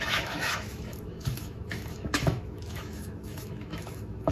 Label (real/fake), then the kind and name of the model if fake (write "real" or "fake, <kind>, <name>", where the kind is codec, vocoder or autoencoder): fake, autoencoder, DAC-VAE